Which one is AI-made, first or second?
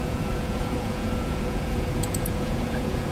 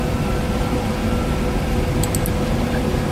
first